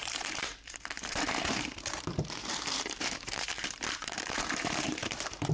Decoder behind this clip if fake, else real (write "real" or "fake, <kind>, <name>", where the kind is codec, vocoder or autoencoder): fake, vocoder, BigVGAN v2